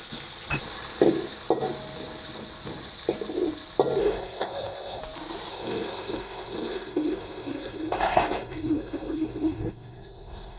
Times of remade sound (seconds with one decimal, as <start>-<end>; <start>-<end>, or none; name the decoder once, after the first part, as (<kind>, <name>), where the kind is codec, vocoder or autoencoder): 4.0-5.0 (codec, SNAC); 5.5-10.6